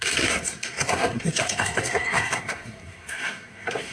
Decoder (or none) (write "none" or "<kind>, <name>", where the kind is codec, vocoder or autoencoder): codec, SNAC